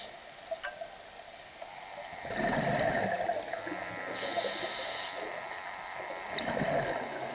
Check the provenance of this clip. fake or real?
real